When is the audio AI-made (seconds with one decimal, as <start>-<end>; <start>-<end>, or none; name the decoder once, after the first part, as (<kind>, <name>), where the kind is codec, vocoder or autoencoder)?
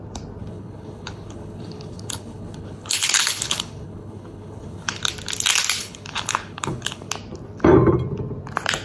0.4-5.0 (codec, HILCodec); 5.8-7.1